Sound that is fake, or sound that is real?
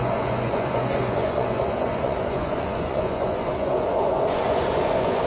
fake